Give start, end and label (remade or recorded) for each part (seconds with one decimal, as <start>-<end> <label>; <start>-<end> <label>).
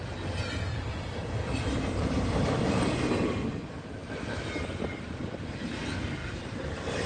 0.0-7.1 recorded